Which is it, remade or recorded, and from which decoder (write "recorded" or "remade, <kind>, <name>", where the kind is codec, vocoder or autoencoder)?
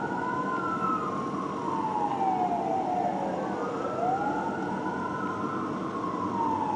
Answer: recorded